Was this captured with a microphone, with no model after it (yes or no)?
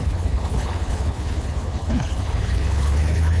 no